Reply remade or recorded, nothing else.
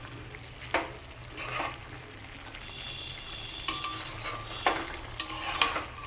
recorded